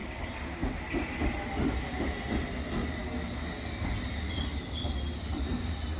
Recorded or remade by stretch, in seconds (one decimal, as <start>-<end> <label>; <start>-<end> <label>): 0.0-6.0 recorded